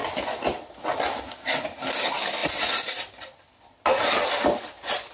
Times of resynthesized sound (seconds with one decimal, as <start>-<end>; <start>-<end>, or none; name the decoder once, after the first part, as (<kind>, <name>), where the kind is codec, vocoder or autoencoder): none